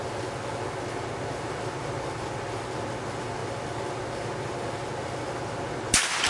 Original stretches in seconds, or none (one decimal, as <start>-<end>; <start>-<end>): 0.0-6.3